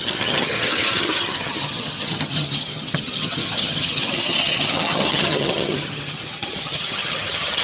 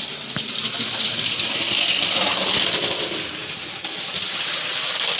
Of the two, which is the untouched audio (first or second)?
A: second